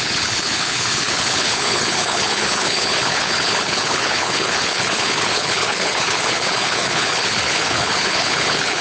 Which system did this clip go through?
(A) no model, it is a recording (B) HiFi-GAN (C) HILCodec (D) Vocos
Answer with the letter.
C